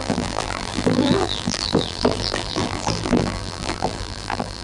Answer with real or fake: fake